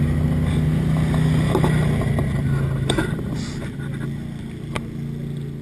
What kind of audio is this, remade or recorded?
recorded